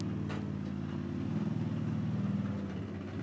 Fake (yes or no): no